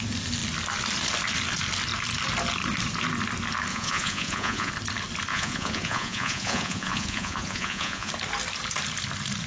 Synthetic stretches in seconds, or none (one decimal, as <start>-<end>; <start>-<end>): 3.7-4.7; 5.3-8.1